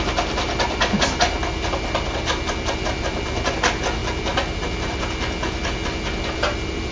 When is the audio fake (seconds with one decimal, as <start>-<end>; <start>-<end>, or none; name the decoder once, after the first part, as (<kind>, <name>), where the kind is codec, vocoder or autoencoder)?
none

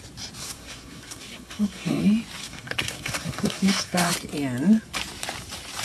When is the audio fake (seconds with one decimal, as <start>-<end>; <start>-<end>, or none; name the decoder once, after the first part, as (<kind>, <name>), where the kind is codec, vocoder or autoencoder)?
0.4-2.0 (codec, SNAC); 2.4-4.1

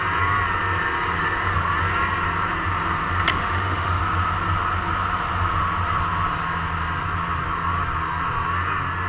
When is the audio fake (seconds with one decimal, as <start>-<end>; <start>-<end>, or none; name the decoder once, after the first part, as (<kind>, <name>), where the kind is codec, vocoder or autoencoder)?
3.3-4.0 (autoencoder, DAC-VAE)

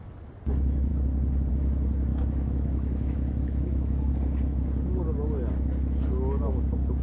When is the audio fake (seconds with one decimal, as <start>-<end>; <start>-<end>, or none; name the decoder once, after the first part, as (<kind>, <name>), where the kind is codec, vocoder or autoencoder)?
2.1-4.1 (autoencoder, DAC-VAE)